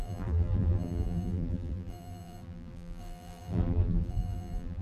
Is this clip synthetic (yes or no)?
yes